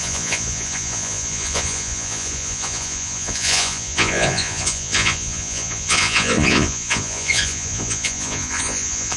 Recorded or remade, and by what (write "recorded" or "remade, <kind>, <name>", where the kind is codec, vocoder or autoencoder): remade, vocoder, Vocos